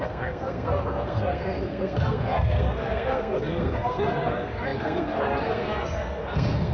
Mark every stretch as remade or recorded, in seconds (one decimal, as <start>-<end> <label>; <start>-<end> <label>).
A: 0.0-6.7 remade